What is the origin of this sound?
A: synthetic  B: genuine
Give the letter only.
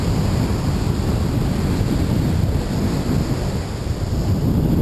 B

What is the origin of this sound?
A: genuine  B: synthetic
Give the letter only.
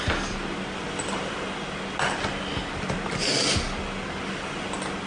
A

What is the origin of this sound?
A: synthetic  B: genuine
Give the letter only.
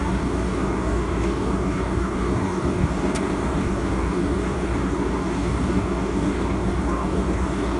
A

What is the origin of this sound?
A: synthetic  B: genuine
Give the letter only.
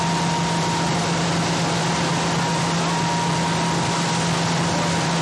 B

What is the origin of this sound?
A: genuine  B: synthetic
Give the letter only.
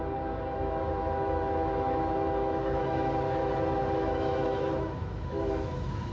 B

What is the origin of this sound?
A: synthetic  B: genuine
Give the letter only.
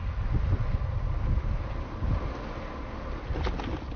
B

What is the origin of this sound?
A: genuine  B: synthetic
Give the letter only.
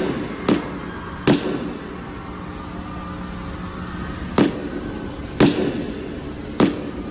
A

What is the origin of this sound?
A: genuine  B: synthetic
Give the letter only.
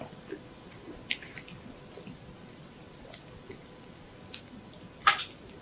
A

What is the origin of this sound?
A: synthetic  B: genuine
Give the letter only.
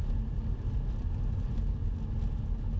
B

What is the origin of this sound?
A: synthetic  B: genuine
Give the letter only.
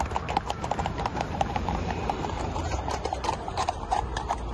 A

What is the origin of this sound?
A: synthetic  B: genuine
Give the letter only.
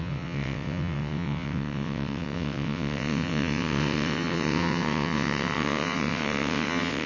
A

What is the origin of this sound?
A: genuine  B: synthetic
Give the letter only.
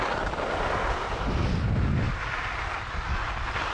A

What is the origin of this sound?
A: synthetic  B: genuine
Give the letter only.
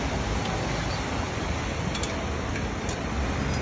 B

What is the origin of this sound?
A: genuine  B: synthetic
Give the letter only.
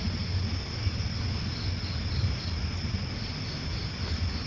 A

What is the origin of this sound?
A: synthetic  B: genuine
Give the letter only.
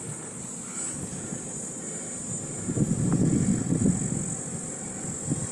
B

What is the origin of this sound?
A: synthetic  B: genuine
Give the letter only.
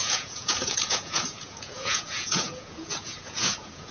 A